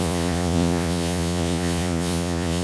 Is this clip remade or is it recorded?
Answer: remade